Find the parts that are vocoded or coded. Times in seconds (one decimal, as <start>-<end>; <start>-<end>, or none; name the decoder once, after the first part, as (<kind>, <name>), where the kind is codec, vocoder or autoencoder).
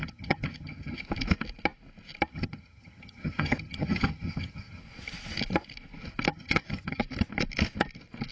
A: 0.0-1.0 (vocoder, HiFi-GAN); 2.3-4.8; 6.3-7.0